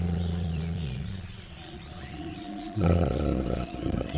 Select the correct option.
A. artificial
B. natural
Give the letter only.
A